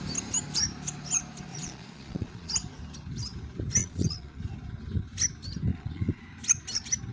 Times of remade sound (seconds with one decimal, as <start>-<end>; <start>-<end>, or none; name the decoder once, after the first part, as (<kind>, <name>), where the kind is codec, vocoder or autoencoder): 1.5-2.5 (vocoder, Vocos); 3.8-4.4; 5.7-6.3